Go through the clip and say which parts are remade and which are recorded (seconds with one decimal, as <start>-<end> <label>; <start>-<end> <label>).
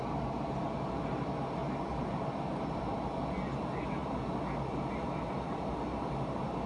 0.0-6.7 recorded